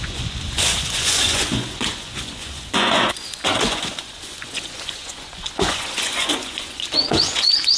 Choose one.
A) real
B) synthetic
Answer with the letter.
B